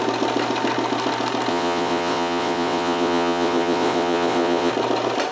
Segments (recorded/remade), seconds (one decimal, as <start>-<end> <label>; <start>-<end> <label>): 0.0-1.5 recorded; 1.5-4.7 remade; 4.7-5.3 recorded